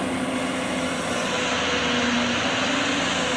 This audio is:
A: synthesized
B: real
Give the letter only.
B